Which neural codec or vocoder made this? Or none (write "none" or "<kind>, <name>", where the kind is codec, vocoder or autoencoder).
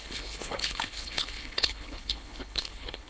codec, HILCodec